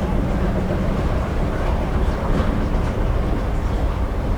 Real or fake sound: real